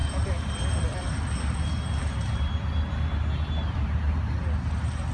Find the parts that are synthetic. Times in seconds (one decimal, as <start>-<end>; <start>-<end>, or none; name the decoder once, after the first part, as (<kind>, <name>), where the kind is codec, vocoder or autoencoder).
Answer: none